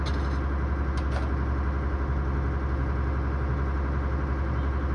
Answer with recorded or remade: recorded